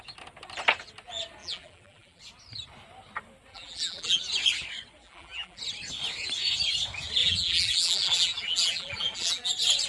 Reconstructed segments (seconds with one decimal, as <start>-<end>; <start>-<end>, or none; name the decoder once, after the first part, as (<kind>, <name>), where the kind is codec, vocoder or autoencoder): 1.4-2.2 (vocoder, BigVGAN v2); 3.5-4.2; 5.0-5.6; 7.2-9.5